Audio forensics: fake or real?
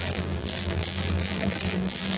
fake